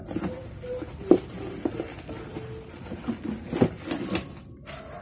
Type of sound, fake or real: real